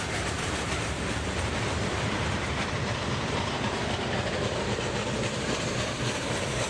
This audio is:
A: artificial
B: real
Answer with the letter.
A